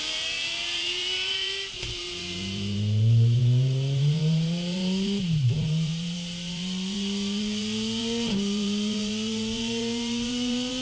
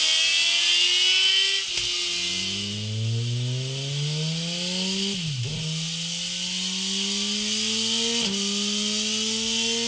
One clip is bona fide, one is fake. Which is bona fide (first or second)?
second